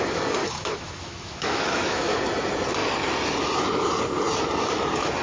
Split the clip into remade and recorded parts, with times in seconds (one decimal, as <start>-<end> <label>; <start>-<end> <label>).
0.0-0.4 recorded; 0.4-2.2 remade; 2.2-5.2 recorded